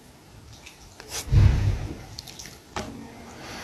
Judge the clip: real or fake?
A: real